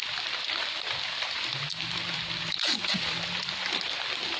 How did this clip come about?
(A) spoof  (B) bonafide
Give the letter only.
B